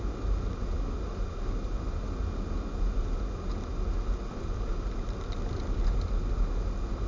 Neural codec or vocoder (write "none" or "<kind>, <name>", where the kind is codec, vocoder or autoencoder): none